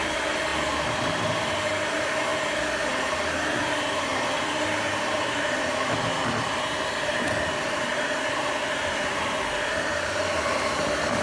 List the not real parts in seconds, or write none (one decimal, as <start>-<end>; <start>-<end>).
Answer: 0.0-0.5; 1.2-2.3; 3.8-11.2